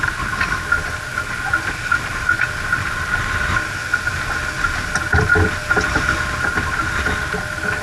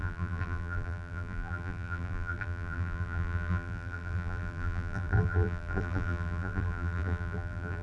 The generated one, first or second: second